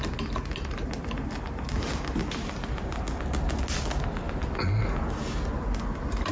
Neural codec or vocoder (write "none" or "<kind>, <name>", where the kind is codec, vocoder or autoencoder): none